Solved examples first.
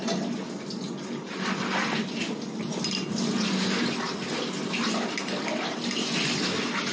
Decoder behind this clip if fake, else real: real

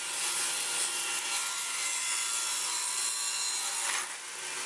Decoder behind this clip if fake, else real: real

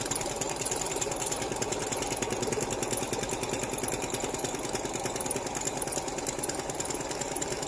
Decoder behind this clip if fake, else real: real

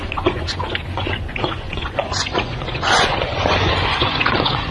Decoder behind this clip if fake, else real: fake, vocoder, Vocos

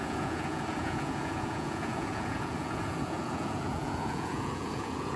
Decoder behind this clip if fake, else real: fake, vocoder, Vocos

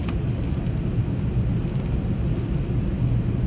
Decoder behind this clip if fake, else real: real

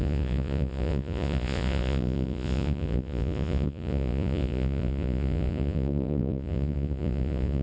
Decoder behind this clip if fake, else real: fake, vocoder, Vocos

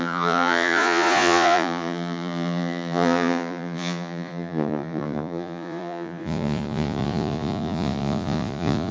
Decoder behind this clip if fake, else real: fake, vocoder, Vocos